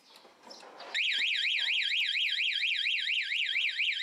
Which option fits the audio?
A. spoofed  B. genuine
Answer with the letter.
B